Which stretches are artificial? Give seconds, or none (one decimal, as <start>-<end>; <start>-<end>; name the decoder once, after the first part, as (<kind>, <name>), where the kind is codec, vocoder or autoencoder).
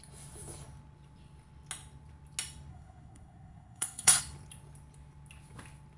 2.7-4.2 (codec, SNAC)